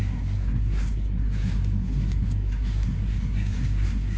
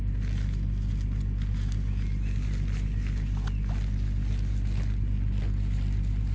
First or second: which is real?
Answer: second